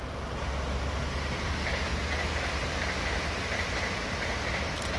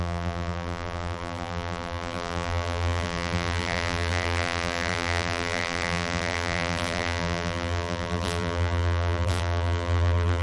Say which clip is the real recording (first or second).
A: first